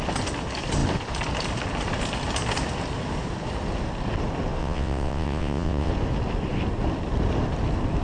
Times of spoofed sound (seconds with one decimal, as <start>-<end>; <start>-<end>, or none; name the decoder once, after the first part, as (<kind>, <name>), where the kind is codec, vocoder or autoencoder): 4.6-5.9 (vocoder, WaveNeXt)